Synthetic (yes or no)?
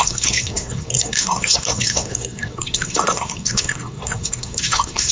yes